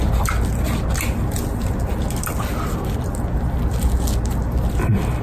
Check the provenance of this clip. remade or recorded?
recorded